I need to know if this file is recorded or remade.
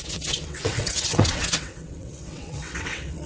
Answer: remade